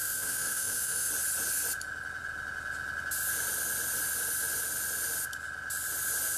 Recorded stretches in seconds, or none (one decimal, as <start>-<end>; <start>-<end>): 1.1-6.4